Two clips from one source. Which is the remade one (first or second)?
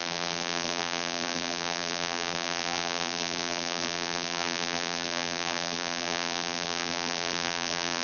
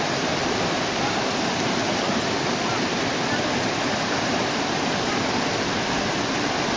first